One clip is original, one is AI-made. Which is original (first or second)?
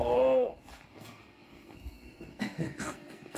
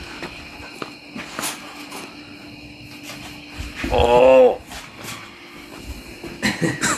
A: second